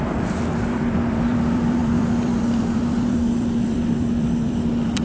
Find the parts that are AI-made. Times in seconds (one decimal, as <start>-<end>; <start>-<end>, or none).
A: 0.0-5.0